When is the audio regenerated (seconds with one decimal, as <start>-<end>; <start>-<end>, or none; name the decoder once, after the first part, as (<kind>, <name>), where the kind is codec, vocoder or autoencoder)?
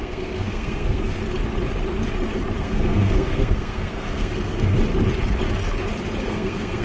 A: 0.0-1.2 (codec, SNAC); 2.6-4.7; 6.2-6.8